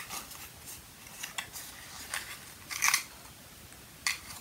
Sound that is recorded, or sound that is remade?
recorded